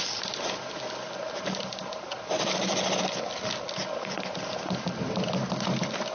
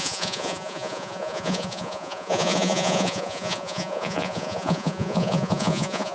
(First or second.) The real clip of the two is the first